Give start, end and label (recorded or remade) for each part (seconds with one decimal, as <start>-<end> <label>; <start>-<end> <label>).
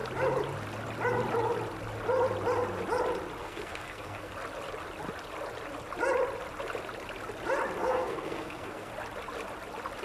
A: 0.0-3.4 recorded; 3.4-4.3 remade; 4.3-7.8 recorded; 7.8-8.9 remade; 8.9-10.0 recorded